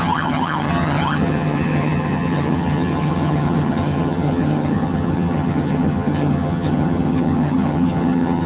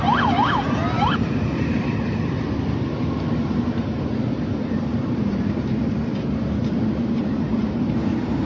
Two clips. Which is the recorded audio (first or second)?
second